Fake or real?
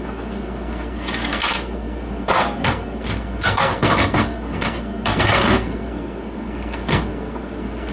fake